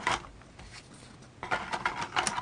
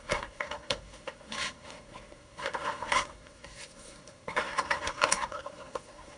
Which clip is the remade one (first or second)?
second